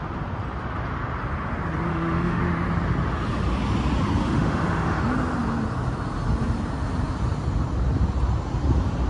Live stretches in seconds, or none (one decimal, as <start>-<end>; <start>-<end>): 0.0-1.9; 2.4-4.2; 5.0-9.1